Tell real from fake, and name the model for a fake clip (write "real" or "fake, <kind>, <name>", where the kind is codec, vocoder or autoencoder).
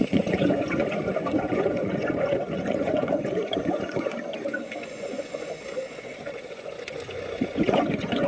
fake, vocoder, Vocos